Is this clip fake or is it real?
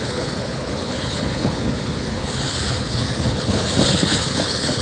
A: fake